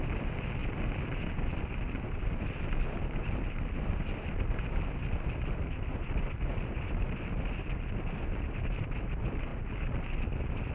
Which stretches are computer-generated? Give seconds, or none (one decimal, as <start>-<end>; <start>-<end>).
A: none